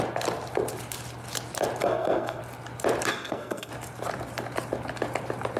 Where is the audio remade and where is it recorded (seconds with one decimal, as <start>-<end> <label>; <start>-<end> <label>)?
0.0-1.8 recorded; 1.8-2.4 remade; 2.4-3.1 recorded; 3.1-3.7 remade; 3.7-5.6 recorded